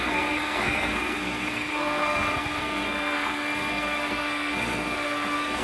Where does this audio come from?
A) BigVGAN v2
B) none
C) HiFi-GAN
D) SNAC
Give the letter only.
D